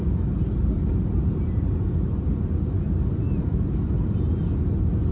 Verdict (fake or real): real